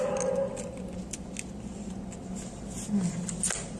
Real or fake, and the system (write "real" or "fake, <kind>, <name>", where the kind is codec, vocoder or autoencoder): real